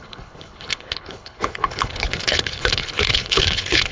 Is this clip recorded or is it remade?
remade